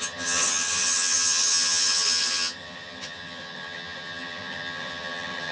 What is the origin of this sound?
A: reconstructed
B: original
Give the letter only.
A